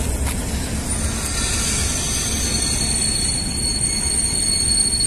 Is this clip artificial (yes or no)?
no